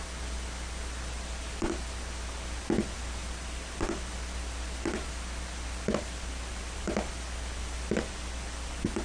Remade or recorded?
recorded